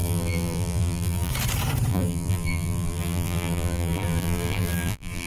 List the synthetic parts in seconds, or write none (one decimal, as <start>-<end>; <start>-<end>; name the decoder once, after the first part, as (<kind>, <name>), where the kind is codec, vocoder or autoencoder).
0.0-1.3 (vocoder, BigVGAN v2); 1.9-5.3